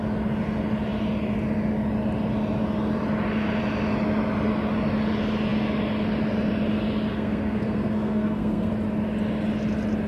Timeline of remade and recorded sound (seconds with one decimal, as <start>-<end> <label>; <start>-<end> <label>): 0.0-7.1 recorded; 7.1-8.7 remade; 8.7-10.1 recorded